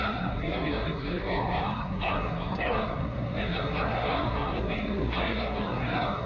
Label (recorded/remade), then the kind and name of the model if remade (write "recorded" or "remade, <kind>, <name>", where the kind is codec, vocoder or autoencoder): remade, codec, SNAC